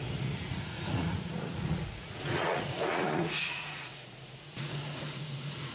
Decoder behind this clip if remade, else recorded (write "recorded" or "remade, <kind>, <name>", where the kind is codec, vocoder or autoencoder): remade, vocoder, Vocos